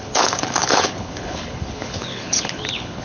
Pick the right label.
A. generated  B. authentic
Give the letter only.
A